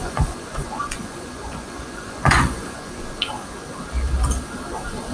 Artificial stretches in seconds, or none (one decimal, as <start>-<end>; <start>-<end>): 0.0-3.1